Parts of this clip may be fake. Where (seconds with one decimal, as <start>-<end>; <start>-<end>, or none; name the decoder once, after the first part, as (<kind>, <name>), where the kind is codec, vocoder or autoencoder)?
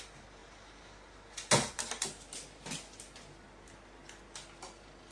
none